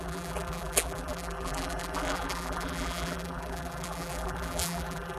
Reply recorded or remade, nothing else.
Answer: remade